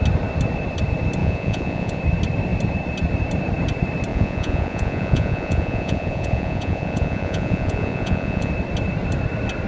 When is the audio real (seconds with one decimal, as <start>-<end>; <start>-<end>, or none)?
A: 0.0-1.2; 2.0-4.1; 8.5-9.7